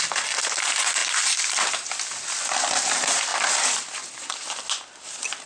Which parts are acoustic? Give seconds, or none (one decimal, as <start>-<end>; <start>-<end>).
0.0-5.5